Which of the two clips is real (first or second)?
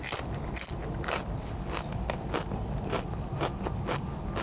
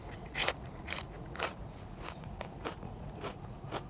first